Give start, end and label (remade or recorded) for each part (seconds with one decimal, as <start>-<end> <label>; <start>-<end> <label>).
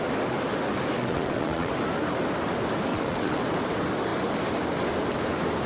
0.0-1.0 recorded; 1.0-1.7 remade; 1.7-2.9 recorded; 2.9-3.4 remade; 3.4-5.7 recorded